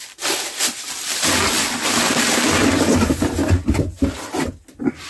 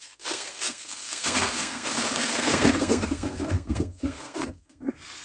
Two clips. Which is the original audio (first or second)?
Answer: first